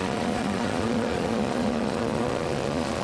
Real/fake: fake